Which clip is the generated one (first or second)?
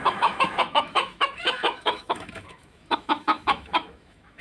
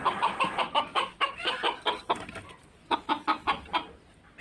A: first